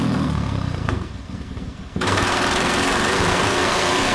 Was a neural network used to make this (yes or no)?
yes